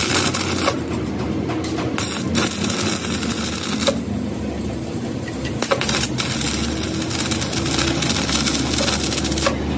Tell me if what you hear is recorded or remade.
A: recorded